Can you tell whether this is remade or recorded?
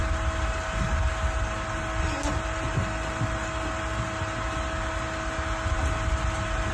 recorded